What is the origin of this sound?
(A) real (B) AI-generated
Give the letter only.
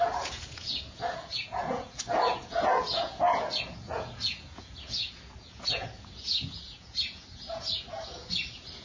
B